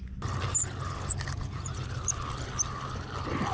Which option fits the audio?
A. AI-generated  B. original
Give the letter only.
B